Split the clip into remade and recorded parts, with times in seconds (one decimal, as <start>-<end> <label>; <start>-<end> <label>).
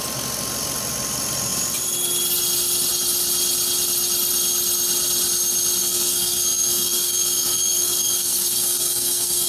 0.0-5.8 recorded; 5.8-9.5 remade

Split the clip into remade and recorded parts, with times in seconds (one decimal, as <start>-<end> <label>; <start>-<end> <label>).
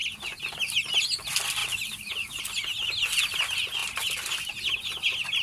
0.0-1.6 recorded; 1.6-2.4 remade; 2.4-5.4 recorded